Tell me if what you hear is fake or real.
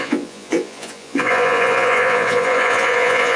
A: fake